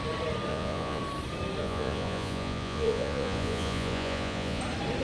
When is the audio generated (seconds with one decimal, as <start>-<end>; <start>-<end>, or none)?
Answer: 0.5-1.0; 1.6-4.6

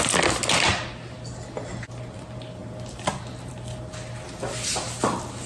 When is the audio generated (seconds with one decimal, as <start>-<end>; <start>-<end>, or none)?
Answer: none

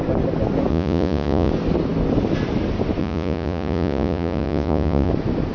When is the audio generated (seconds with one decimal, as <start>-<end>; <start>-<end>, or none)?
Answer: 0.7-1.5; 3.0-5.1

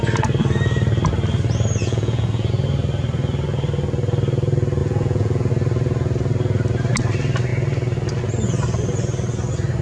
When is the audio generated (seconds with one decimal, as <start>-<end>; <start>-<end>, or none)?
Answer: 1.8-2.5; 4.8-5.5